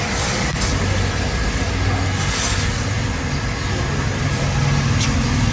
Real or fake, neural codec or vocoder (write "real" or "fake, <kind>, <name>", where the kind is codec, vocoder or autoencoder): real